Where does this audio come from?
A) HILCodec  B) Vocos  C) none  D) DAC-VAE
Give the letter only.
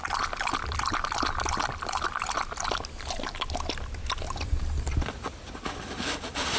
C